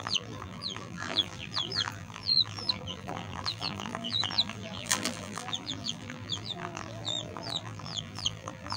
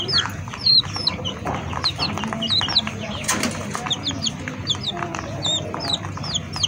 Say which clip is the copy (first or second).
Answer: first